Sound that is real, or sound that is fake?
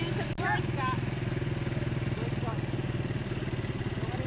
real